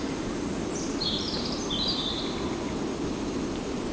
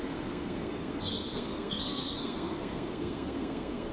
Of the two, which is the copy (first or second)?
second